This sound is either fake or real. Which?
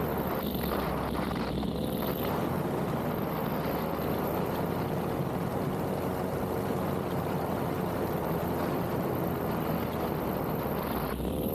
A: fake